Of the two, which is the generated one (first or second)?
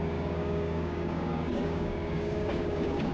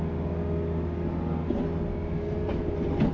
first